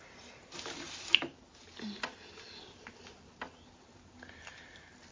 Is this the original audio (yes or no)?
yes